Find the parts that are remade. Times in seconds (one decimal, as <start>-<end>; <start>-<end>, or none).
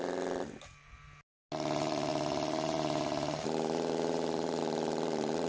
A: 2.1-4.6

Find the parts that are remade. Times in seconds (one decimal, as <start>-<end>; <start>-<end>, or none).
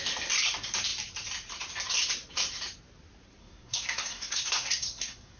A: 3.4-5.4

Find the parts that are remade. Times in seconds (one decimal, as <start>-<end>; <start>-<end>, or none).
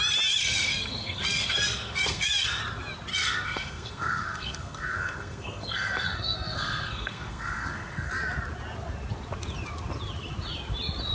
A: 0.4-2.6; 3.1-8.1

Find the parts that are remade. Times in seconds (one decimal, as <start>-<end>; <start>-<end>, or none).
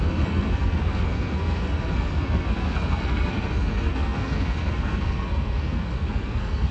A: 0.0-6.7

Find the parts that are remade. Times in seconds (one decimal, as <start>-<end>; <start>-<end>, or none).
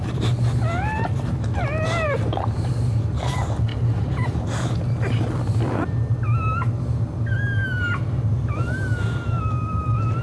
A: none